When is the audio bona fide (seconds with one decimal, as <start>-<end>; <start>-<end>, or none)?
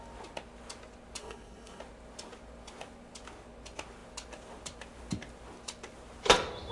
0.0-1.2; 1.8-6.7